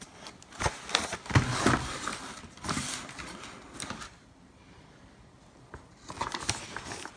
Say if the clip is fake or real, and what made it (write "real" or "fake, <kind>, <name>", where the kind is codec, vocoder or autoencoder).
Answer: real